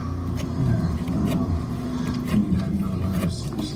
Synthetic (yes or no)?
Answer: no